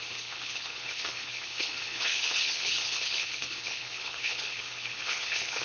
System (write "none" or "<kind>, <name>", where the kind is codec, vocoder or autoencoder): codec, HILCodec